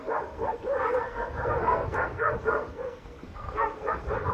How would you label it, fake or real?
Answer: fake